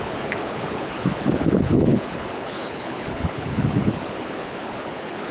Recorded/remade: remade